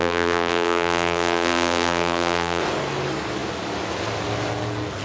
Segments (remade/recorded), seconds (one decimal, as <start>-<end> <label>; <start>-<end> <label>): 0.0-2.6 remade; 2.6-5.0 recorded

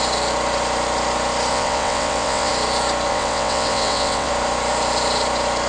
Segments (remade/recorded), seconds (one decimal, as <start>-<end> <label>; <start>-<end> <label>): 0.0-1.5 recorded; 1.5-2.5 remade; 2.5-3.1 recorded; 3.1-4.3 remade; 4.3-5.7 recorded

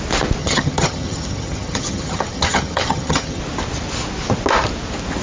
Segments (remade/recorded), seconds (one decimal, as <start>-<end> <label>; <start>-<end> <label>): 0.0-0.4 recorded; 0.4-3.4 remade; 3.4-5.2 recorded

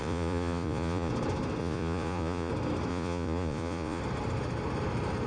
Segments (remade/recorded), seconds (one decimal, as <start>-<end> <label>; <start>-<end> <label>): 0.0-1.1 remade; 1.1-1.6 recorded; 1.6-2.5 remade; 2.5-2.9 recorded; 2.9-4.0 remade; 4.0-5.3 recorded

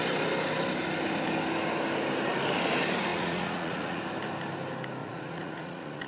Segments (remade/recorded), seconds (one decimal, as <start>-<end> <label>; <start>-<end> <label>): 0.0-3.1 recorded; 3.1-4.0 remade; 4.0-5.0 recorded; 5.0-6.1 remade

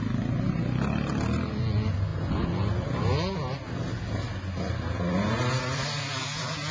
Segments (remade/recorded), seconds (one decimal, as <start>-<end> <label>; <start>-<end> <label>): 0.0-6.7 recorded

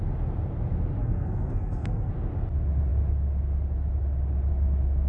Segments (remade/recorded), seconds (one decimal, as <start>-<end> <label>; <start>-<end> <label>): 0.0-1.0 recorded; 1.0-2.1 remade; 2.1-5.1 recorded

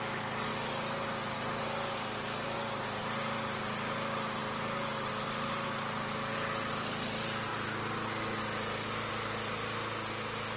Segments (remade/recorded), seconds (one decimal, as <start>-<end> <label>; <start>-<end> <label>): 0.0-10.6 recorded